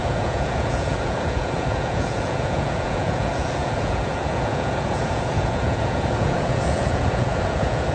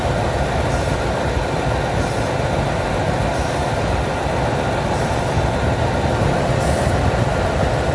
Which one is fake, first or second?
first